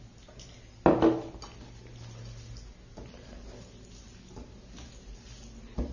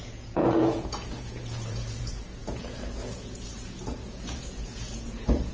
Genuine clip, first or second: first